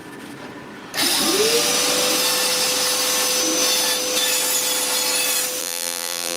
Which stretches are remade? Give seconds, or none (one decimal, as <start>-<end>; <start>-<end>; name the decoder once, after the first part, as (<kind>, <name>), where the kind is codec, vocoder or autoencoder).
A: 5.6-6.4 (vocoder, BigVGAN v2)